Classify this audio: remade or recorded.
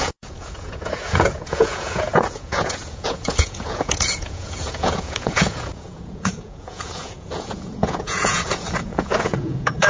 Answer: remade